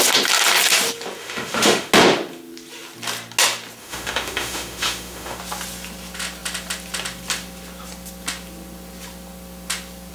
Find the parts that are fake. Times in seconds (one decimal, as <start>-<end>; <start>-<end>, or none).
1.2-1.9; 3.8-5.4